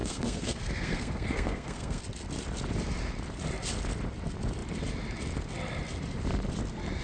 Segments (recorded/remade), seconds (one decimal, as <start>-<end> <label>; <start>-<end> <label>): 0.0-2.0 remade; 2.0-7.0 recorded